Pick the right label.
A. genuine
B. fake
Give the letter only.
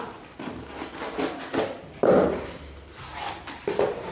A